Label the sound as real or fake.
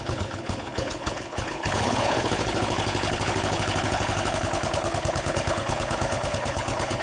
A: fake